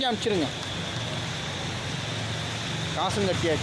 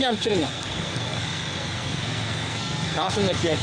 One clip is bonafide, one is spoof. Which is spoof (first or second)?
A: second